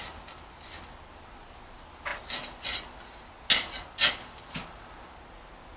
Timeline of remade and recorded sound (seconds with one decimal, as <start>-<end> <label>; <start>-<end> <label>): 0.0-5.8 recorded